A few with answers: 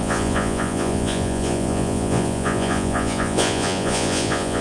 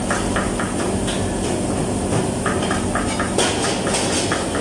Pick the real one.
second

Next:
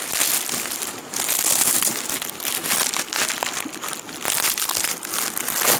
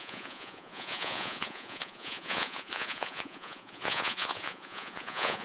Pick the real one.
first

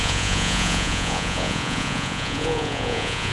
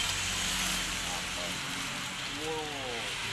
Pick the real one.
second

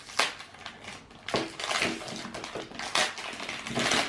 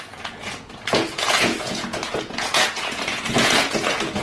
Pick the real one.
first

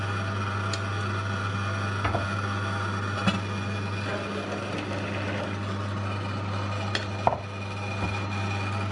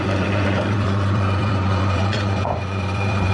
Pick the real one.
first